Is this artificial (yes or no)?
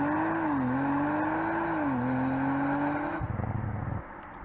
no